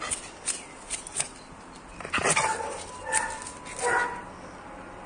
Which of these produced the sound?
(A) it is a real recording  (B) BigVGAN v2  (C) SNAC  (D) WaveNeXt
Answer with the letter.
A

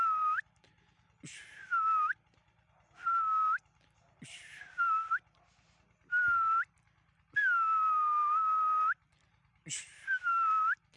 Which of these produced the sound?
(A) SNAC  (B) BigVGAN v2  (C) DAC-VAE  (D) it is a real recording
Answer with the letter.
D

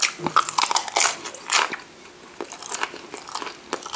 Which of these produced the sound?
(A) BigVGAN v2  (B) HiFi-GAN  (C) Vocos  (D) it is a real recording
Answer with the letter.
D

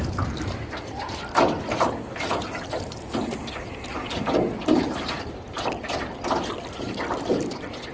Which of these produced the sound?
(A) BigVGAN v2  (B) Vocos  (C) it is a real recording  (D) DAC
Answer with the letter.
C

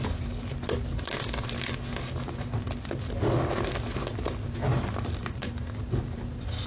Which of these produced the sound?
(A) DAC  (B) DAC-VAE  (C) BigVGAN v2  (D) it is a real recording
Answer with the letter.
C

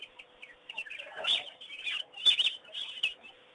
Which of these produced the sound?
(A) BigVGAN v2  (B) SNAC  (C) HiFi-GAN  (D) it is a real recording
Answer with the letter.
A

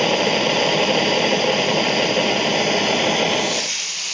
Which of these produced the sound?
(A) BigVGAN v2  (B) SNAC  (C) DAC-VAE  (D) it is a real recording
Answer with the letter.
D